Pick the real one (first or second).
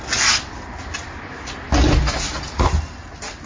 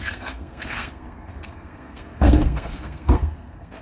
first